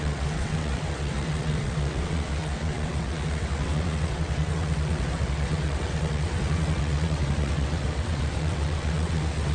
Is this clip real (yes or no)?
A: no